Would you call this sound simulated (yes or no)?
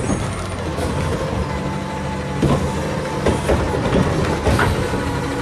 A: no